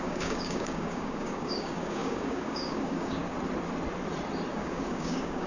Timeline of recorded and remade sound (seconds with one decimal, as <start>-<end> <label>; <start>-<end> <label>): 0.0-3.2 remade; 3.2-4.5 recorded; 4.5-5.5 remade